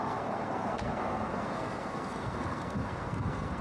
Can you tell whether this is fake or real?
fake